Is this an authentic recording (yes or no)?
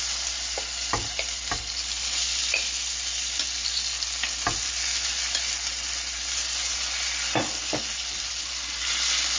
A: yes